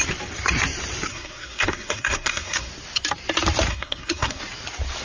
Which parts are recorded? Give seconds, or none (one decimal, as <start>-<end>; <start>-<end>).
0.0-1.1; 2.7-3.7; 4.4-5.0